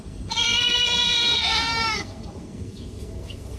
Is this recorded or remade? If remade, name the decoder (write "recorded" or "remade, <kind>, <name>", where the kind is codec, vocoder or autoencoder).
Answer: remade, codec, SNAC